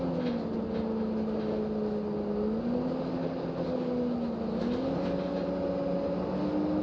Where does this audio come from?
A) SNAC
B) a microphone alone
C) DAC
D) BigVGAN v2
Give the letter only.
B